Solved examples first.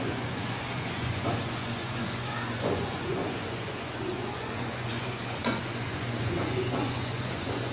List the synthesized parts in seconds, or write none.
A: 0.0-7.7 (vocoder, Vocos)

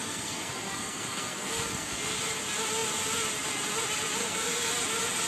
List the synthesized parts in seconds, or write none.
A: 0.0-2.2 (codec, SNAC); 4.2-4.7

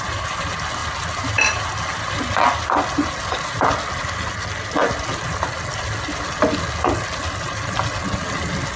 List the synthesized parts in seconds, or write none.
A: none

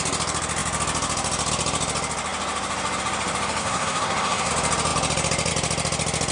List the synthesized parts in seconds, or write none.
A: 3.6-4.5 (codec, SNAC)

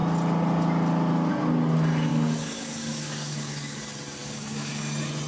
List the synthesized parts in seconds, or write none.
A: 2.1-3.8 (codec, DAC); 4.2-4.8

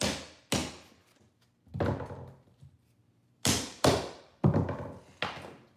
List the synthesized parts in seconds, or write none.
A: 3.0-4.2 (vocoder, BigVGAN v2)

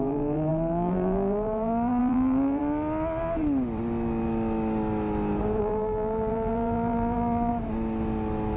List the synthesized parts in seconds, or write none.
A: 0.0-2.6 (vocoder, BigVGAN v2); 5.6-7.5